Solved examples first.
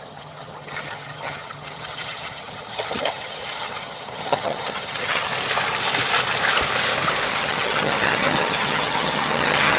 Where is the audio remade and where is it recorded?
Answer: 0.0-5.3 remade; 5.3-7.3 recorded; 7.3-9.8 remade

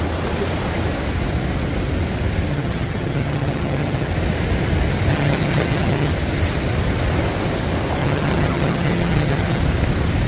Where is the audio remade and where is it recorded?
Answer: 0.0-2.5 recorded; 2.5-4.1 remade; 4.1-5.1 recorded; 5.1-6.1 remade; 6.1-8.0 recorded; 8.0-9.6 remade; 9.6-10.3 recorded

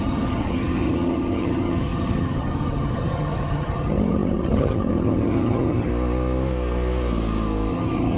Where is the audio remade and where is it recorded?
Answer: 0.0-5.9 remade; 5.9-7.7 recorded; 7.7-8.2 remade

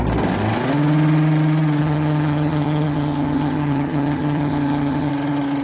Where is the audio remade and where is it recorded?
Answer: 0.0-1.8 recorded; 1.8-5.1 remade; 5.1-5.6 recorded

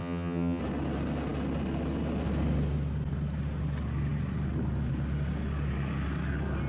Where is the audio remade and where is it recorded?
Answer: 0.0-0.6 remade; 0.6-6.7 recorded

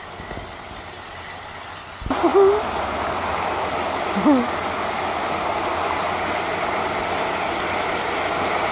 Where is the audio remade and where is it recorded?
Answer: 0.0-8.7 recorded